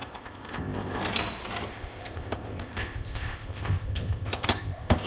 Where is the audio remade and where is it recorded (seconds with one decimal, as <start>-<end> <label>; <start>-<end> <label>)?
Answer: 0.0-1.0 remade; 1.0-1.7 recorded; 1.7-5.1 remade